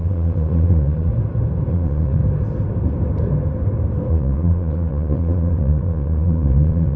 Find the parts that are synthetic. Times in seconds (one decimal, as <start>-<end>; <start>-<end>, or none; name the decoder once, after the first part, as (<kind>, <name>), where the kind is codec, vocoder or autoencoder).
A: 0.0-1.1 (vocoder, Vocos); 1.7-2.2; 4.1-7.0